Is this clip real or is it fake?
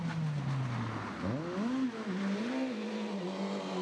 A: real